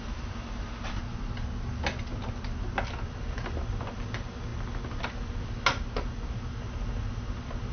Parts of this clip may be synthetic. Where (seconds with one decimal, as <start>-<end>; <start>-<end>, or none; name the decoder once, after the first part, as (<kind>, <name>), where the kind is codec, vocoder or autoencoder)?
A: none

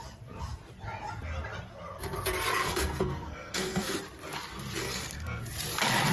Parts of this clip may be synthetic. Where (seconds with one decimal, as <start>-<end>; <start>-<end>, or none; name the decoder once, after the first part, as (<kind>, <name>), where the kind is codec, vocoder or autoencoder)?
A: 2.6-4.0 (codec, SNAC); 4.8-5.4

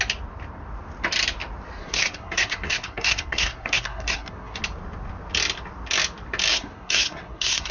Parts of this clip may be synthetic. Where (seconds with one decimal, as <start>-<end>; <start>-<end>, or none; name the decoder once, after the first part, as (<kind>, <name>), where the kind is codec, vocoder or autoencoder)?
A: 1.8-4.6 (codec, SNAC); 6.5-7.7

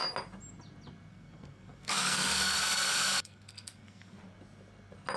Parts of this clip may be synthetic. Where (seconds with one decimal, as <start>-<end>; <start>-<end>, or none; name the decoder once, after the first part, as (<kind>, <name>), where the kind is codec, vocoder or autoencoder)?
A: 1.1-4.2 (codec, SNAC)

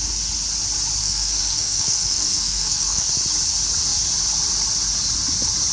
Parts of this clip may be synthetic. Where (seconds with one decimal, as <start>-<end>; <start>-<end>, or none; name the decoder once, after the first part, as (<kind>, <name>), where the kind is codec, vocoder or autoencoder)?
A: 1.0-3.1 (codec, SNAC)

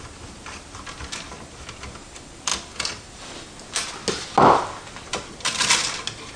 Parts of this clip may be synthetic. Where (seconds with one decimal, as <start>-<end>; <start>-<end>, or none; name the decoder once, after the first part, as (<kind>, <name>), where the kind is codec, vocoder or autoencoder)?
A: none

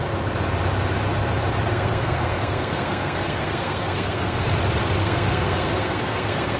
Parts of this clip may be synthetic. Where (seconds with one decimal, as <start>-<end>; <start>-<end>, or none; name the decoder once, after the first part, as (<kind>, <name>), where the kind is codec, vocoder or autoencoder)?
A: 1.7-4.5 (codec, SNAC); 5.0-6.6

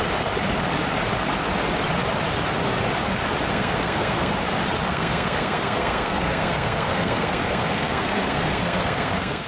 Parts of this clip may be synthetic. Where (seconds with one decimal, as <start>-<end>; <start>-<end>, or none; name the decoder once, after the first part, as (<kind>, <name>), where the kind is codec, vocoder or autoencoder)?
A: 3.5-4.3 (codec, SNAC); 4.9-9.5